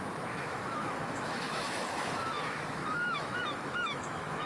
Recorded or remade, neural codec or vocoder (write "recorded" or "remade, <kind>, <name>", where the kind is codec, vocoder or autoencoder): remade, autoencoder, DAC-VAE